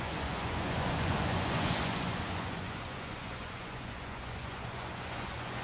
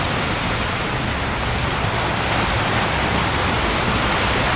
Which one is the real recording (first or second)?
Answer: second